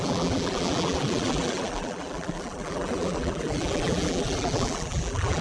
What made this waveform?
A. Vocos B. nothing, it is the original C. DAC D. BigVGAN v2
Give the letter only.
D